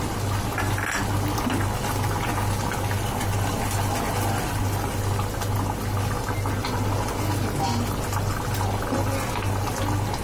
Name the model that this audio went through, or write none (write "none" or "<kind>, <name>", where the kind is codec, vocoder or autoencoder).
none